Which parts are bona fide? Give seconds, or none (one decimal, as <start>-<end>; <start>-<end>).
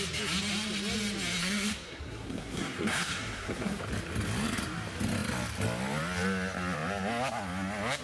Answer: 0.0-1.4; 3.8-8.0